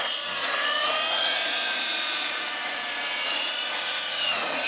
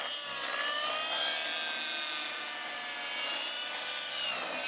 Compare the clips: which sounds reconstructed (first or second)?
first